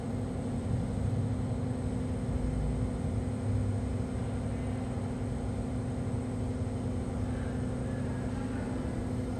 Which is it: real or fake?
real